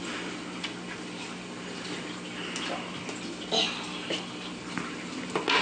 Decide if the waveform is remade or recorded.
recorded